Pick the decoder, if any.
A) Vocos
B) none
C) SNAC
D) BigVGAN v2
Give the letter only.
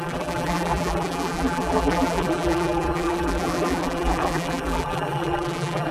D